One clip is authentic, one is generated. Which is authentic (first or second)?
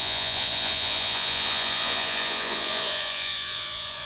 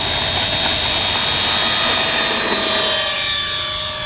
second